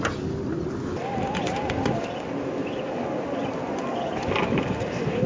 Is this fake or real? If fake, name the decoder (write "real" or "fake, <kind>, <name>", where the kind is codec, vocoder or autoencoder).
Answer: real